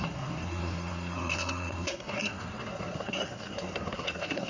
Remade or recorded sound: remade